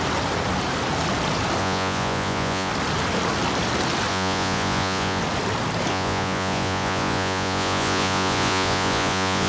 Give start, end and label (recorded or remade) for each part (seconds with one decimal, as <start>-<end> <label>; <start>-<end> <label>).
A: 0.0-1.6 recorded; 1.6-2.7 remade; 2.7-4.1 recorded; 4.1-5.2 remade; 5.2-5.9 recorded; 5.9-9.5 remade